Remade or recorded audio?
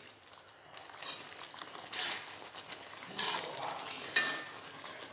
recorded